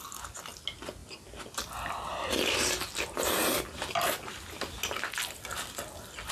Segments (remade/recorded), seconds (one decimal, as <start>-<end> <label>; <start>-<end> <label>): 0.0-6.3 recorded